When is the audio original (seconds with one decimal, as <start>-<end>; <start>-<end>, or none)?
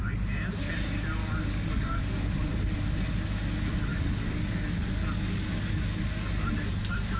0.0-1.2; 2.0-3.9; 6.5-7.2